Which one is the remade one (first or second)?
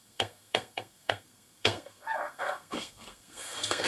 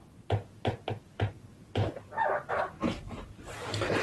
first